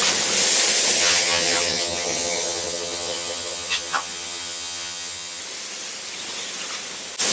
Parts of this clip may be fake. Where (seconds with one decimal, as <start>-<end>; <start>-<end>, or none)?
1.0-5.4